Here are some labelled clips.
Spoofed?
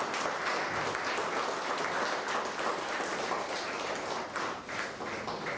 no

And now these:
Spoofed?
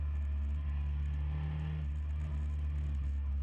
no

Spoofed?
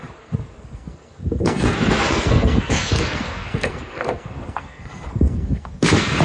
yes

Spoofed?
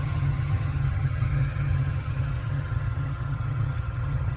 yes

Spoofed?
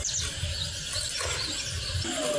no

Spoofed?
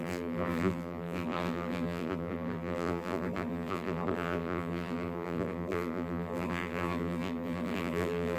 yes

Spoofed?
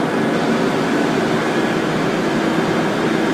no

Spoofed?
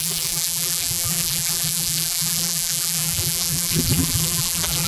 yes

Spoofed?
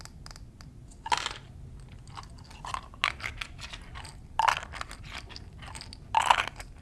no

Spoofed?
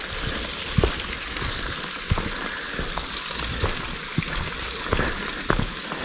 no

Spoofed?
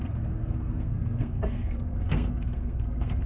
yes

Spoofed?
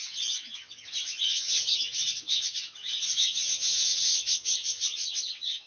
yes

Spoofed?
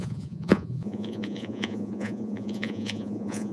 yes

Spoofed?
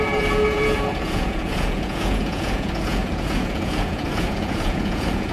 yes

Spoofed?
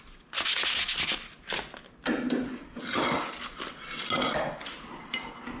no